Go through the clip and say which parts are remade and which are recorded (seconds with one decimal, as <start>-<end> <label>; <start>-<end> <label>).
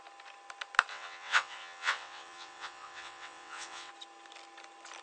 0.0-0.9 recorded; 0.9-3.9 remade; 3.9-5.0 recorded